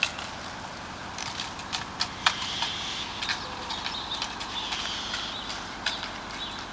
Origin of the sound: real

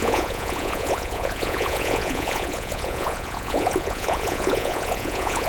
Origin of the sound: fake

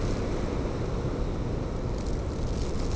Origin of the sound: real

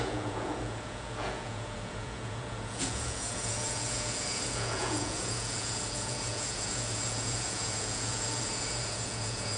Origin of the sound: fake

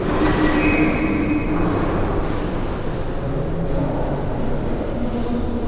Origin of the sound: real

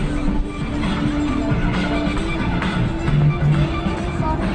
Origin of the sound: real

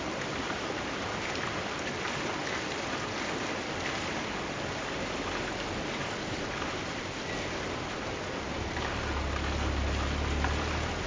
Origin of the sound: real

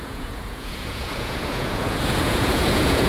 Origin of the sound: fake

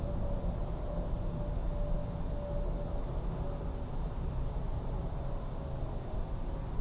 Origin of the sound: real